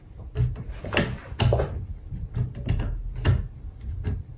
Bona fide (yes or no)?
yes